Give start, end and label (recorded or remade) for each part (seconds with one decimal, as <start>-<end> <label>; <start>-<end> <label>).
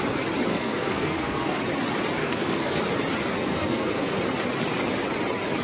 0.0-0.5 recorded; 0.5-1.6 remade; 1.6-2.2 recorded; 2.2-2.8 remade; 2.8-3.5 recorded; 3.5-4.1 remade; 4.1-5.6 recorded